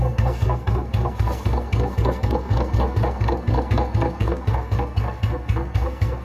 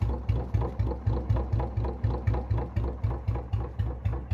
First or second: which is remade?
first